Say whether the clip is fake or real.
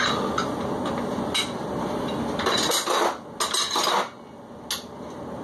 real